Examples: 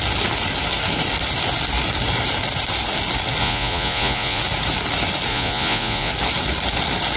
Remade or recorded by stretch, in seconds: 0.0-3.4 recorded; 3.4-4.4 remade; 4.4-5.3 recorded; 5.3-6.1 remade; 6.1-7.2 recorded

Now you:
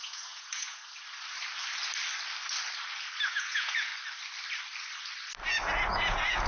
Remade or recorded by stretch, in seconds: 0.0-0.8 remade; 0.8-3.3 recorded; 3.3-3.9 remade; 3.9-5.9 recorded; 5.9-6.5 remade

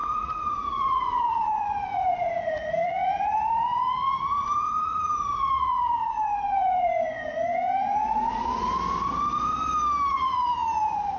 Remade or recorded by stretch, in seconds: 0.0-8.7 remade; 8.7-10.1 recorded; 10.1-11.2 remade

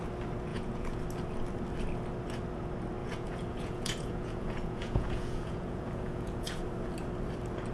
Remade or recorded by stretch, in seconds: 0.0-0.5 recorded; 0.5-1.0 remade; 1.0-3.0 recorded; 3.0-6.6 remade; 6.6-7.7 recorded

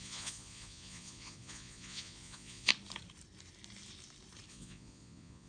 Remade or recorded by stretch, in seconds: 0.0-2.7 remade; 2.7-4.5 recorded; 4.5-5.5 remade

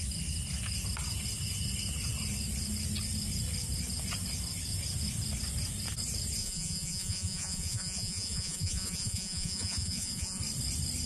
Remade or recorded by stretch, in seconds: 0.0-6.4 recorded; 6.4-10.4 remade; 10.4-11.1 recorded